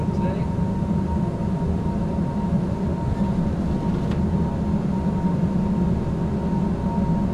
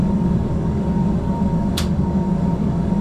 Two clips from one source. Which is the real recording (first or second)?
first